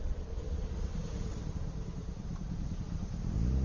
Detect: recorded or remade remade